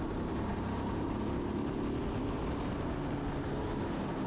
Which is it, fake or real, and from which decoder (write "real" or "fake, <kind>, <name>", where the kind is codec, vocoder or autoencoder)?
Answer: real